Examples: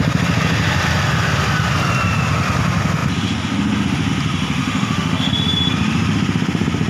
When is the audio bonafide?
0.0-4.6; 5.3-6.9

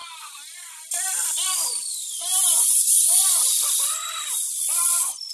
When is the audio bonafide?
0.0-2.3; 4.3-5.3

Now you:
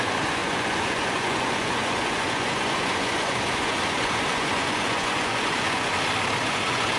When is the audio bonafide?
5.9-6.4

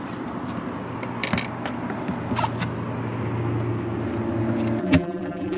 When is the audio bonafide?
0.0-4.8